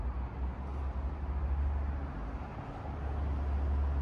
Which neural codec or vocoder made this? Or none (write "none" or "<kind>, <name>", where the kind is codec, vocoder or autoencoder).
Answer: none